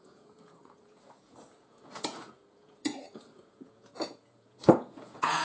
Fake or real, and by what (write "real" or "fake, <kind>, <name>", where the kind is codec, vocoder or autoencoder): fake, vocoder, Vocos